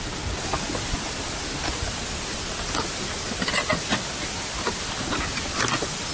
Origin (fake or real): real